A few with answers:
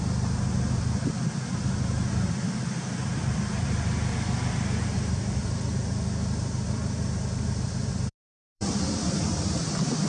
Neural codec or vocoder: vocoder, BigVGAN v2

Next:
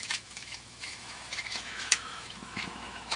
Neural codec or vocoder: autoencoder, DAC-VAE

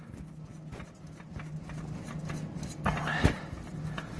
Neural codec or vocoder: none